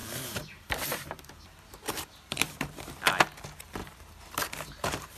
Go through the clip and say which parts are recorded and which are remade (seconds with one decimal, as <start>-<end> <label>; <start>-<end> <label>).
0.0-3.1 remade; 3.1-3.8 recorded; 3.8-5.2 remade